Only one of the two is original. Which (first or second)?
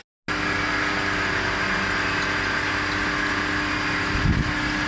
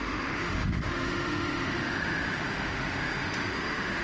first